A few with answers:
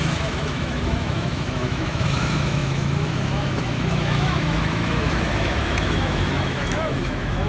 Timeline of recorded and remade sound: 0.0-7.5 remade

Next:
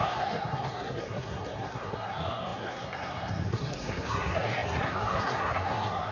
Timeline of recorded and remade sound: 0.0-6.1 remade

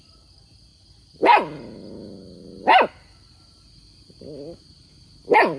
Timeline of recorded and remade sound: 0.0-5.6 recorded

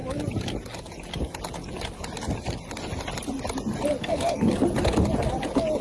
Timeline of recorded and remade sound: 0.0-4.0 recorded; 4.0-4.5 remade; 4.5-5.8 recorded

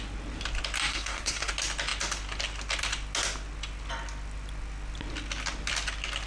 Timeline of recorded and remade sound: 0.0-0.9 recorded; 0.9-1.5 remade; 1.5-6.3 recorded